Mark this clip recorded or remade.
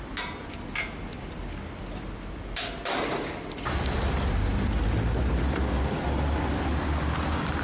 recorded